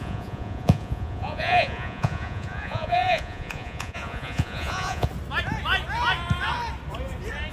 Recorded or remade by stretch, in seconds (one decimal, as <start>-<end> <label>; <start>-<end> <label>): 0.0-5.1 remade; 5.1-7.5 recorded